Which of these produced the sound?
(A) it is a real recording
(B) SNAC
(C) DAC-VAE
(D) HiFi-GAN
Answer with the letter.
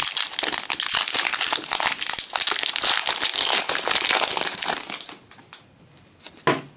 A